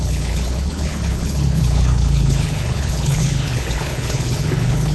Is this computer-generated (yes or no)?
yes